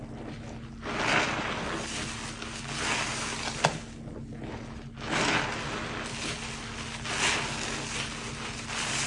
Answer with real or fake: real